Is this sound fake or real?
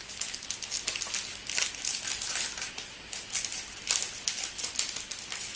real